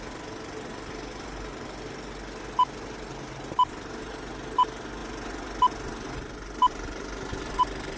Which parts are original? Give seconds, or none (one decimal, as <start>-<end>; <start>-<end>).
0.0-8.0